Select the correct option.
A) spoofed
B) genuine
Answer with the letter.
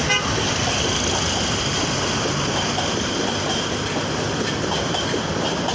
B